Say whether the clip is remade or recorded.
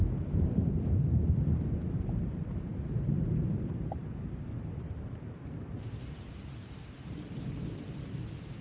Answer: remade